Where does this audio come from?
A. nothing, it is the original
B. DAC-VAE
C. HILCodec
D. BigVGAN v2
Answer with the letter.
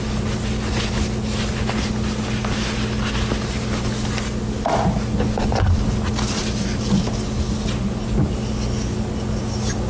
A